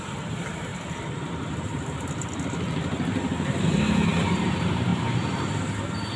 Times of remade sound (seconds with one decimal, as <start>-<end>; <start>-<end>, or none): 0.0-0.7; 4.4-6.2